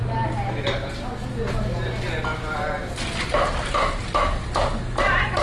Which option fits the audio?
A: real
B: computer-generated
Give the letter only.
A